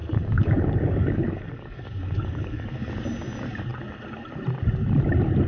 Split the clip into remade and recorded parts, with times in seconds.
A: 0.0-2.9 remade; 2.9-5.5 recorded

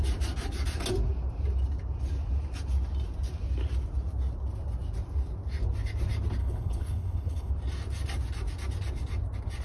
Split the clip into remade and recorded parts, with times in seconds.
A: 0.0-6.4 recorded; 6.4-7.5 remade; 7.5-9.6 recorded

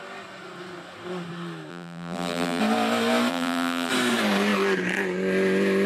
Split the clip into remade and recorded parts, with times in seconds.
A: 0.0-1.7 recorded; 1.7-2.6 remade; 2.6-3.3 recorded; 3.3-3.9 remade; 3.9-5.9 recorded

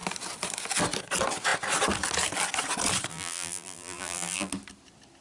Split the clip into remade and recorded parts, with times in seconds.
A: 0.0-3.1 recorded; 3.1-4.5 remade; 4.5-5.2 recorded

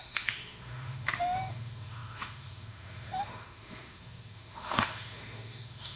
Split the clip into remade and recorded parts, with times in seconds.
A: 0.0-6.0 remade

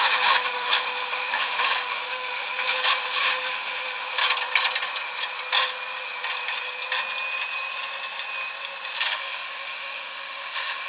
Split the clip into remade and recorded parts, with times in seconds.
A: 0.0-4.2 remade; 4.2-9.0 recorded; 9.0-10.9 remade